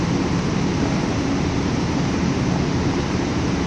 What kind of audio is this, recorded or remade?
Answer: remade